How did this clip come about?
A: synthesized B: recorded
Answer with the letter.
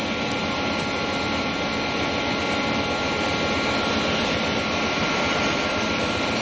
B